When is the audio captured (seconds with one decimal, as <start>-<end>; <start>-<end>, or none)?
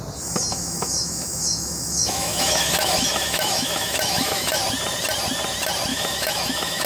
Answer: 0.0-0.5; 4.6-5.9